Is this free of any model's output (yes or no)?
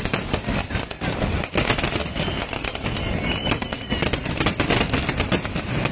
yes